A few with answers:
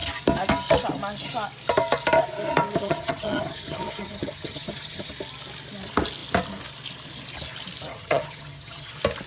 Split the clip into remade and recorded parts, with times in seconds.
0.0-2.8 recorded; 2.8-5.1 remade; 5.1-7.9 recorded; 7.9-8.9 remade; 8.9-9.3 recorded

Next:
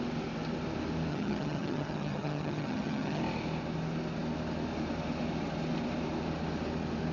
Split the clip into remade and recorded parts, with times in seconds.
0.0-1.1 recorded; 1.1-3.2 remade; 3.2-7.1 recorded

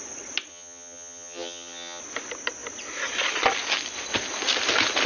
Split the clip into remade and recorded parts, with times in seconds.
0.0-0.5 recorded; 0.5-2.0 remade; 2.0-5.1 recorded

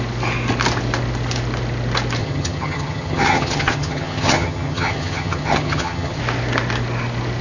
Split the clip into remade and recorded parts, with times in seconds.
0.0-2.2 recorded; 2.2-6.2 remade; 6.2-7.4 recorded